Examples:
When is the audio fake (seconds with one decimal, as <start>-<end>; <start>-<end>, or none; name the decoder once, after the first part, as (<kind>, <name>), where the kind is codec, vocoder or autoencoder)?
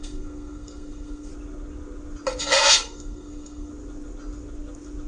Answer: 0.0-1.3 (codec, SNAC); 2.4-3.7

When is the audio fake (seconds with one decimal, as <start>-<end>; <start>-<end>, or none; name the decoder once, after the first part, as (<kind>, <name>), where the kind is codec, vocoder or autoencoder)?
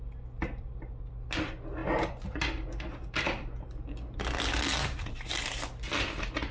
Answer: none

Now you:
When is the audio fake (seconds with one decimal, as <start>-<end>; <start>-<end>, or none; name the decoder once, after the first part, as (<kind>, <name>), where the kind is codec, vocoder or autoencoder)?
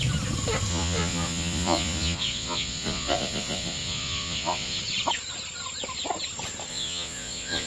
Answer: 0.7-4.8 (vocoder, Vocos); 6.7-7.7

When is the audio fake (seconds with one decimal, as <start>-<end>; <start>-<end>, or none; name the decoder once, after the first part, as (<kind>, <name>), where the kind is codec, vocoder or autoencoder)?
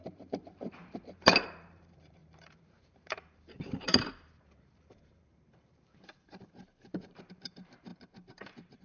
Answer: 0.0-8.8 (vocoder, BigVGAN v2)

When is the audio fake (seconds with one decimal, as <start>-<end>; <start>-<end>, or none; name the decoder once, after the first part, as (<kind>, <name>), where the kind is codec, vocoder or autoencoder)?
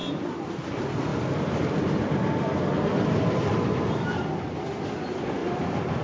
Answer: 0.0-0.5 (vocoder, BigVGAN v2); 1.1-4.7; 5.4-6.0